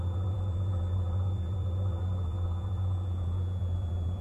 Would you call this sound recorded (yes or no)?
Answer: no